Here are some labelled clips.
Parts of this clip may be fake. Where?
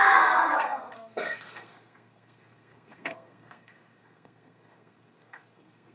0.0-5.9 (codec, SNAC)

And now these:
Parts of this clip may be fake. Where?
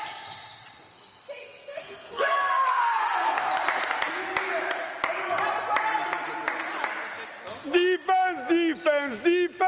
1.4-3.5 (codec, SNAC)